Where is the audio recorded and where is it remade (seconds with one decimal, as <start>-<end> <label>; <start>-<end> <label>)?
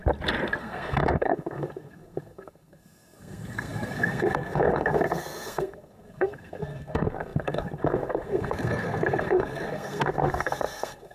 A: 0.0-0.6 recorded; 0.6-11.1 remade